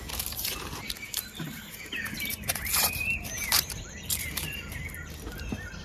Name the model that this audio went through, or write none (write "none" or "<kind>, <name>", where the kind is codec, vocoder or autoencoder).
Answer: vocoder, BigVGAN v2